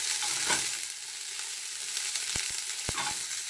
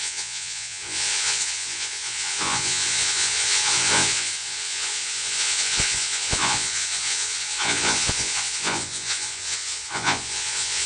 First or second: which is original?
first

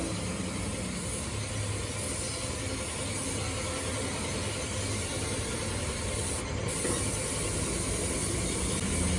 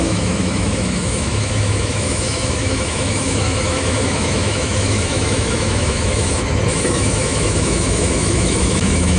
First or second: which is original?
first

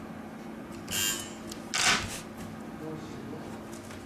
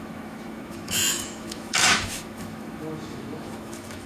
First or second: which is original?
first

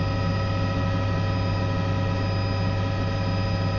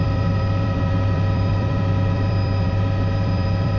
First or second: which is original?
first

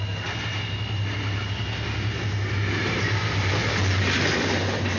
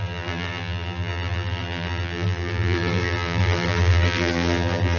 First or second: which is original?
first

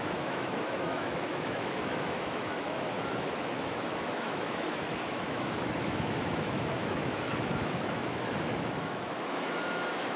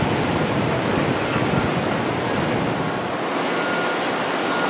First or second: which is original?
second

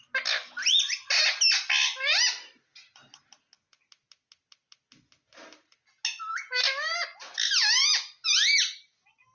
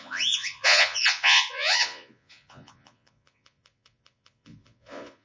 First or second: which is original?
first